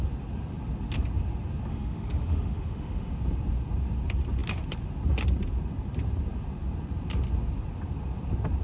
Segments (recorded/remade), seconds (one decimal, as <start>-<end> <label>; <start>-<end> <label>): 0.0-1.7 recorded; 1.7-3.1 remade; 3.1-8.6 recorded